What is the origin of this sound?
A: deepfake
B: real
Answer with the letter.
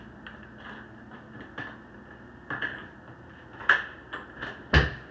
B